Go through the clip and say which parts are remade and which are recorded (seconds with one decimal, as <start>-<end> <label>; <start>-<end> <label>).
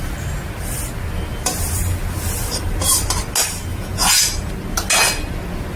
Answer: 0.0-3.7 recorded; 3.7-4.5 remade; 4.5-5.8 recorded